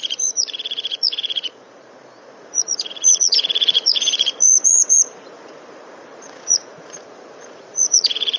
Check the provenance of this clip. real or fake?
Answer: fake